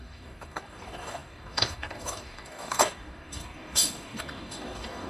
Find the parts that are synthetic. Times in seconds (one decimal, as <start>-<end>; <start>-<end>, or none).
0.0-5.1

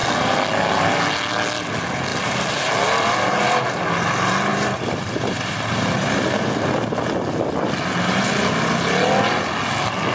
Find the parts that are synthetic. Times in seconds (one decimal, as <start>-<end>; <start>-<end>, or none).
2.1-2.7; 4.5-6.5

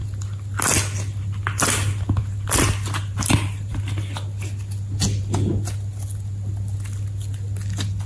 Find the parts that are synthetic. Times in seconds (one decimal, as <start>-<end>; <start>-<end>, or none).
none

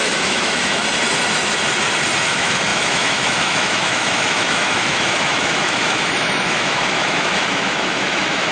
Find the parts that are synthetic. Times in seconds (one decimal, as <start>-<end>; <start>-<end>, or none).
0.0-0.8; 2.2-8.5

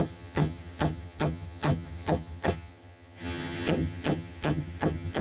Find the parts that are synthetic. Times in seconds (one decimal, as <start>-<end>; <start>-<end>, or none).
0.0-5.2

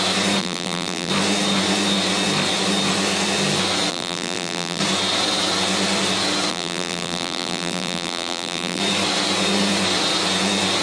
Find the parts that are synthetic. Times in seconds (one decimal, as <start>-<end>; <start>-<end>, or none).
0.4-1.1; 3.9-4.8; 6.5-8.8